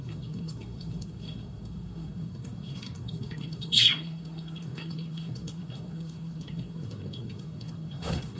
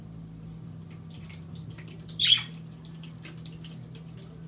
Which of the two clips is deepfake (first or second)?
first